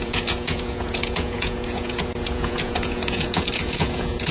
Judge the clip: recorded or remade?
remade